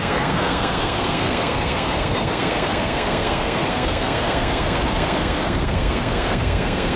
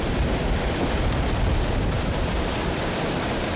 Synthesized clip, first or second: first